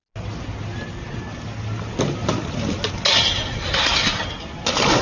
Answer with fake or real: real